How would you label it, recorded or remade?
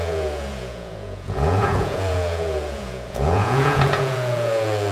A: remade